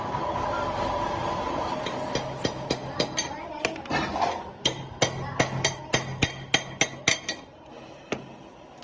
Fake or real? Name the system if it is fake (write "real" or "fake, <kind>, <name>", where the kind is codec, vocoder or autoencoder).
real